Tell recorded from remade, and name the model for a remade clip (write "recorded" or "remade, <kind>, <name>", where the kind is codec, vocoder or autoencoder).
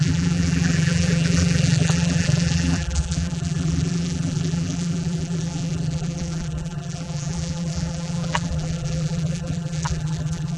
remade, vocoder, BigVGAN v2